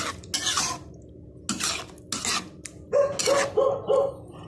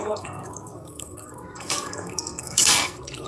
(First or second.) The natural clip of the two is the first